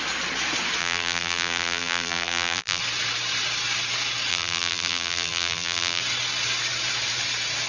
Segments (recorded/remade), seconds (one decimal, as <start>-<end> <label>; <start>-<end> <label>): 0.0-0.8 recorded; 0.8-2.8 remade; 2.8-4.3 recorded; 4.3-6.0 remade; 6.0-7.7 recorded